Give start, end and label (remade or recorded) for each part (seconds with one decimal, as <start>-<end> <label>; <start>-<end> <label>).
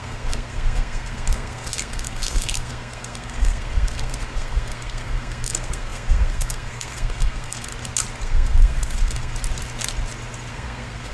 0.0-7.7 remade; 7.7-8.2 recorded; 8.2-9.3 remade; 9.3-10.5 recorded; 10.5-11.1 remade